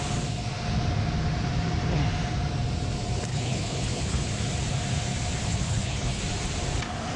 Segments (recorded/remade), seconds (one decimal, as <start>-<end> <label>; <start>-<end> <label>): 0.0-3.3 recorded; 3.3-4.3 remade; 4.3-5.5 recorded; 5.5-6.2 remade; 6.2-7.2 recorded